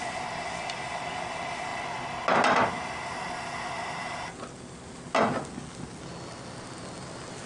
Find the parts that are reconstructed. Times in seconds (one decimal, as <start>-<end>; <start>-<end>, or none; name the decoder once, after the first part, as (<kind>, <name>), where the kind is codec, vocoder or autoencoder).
none